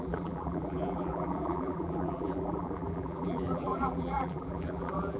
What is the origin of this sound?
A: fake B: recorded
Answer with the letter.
A